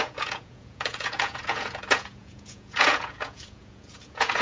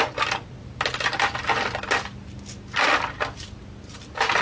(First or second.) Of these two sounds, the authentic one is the second